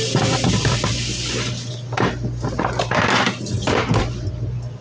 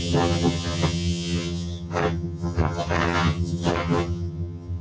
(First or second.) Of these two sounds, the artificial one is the second